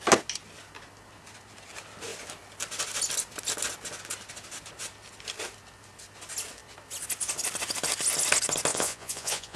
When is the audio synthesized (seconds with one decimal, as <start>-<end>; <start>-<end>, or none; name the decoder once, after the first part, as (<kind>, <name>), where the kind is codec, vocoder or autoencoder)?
8.7-9.6 (vocoder, Vocos)